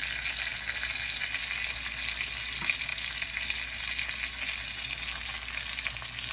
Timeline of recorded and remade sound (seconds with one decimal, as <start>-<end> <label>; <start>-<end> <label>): 0.0-6.3 recorded